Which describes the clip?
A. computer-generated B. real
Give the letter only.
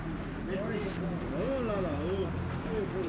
B